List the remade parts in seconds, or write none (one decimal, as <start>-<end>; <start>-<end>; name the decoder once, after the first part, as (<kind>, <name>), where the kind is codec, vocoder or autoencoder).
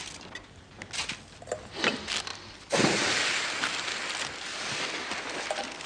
2.3-5.9 (vocoder, BigVGAN v2)